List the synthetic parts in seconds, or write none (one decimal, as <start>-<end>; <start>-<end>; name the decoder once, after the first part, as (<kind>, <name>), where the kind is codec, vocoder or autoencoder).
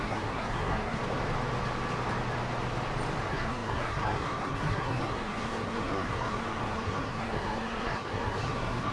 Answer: 0.0-1.0 (codec, SNAC); 3.2-8.9